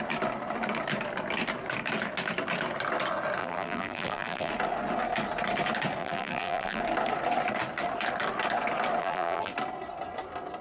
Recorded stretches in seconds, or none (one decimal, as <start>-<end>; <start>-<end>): 0.0-3.4; 4.5-6.0; 6.8-9.0; 9.5-10.6